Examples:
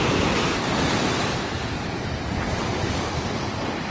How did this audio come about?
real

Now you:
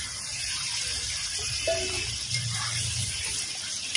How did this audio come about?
fake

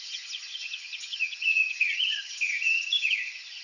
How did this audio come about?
fake